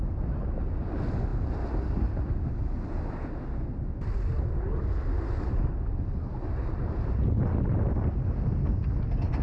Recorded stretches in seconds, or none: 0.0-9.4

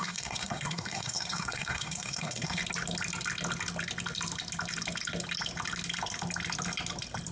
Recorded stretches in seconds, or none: 2.6-7.3

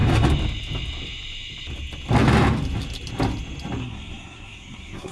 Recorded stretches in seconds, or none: 0.0-3.8

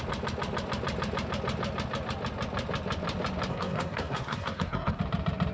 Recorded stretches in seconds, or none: 0.0-3.5; 5.0-5.5